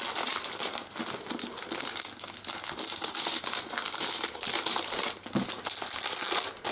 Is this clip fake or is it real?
real